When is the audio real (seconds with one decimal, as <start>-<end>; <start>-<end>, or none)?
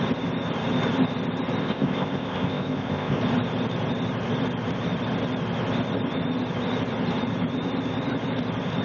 0.0-1.6; 3.2-8.8